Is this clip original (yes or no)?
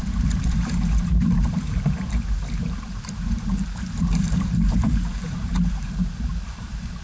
no